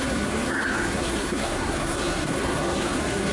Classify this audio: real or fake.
fake